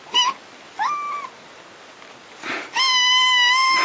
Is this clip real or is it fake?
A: real